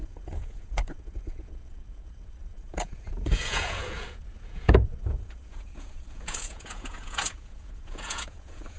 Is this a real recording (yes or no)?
no